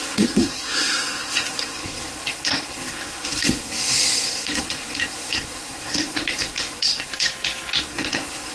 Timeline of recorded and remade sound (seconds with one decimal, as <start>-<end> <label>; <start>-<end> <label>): 0.0-7.1 remade; 7.1-7.8 recorded; 7.8-8.5 remade

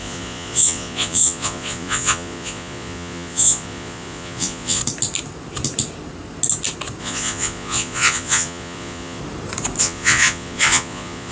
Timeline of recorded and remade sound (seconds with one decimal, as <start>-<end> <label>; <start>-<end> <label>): 0.0-4.8 remade; 4.8-7.0 recorded; 7.0-9.2 remade; 9.2-9.8 recorded; 9.8-11.3 remade